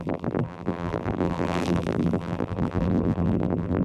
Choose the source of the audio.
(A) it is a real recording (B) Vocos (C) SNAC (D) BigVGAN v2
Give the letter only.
D